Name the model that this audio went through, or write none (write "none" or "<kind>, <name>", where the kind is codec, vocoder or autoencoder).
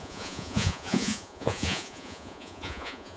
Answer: vocoder, Vocos